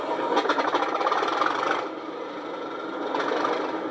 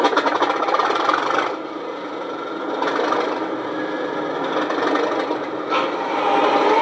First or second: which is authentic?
second